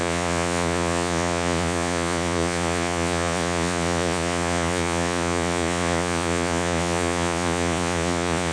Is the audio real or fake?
fake